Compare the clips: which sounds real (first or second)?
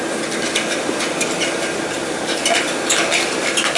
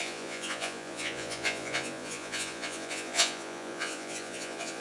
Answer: first